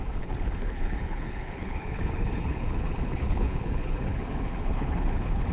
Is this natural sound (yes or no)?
no